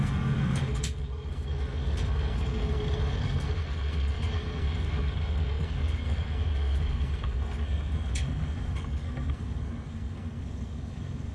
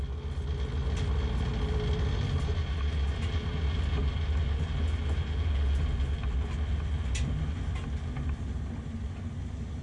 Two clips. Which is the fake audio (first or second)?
first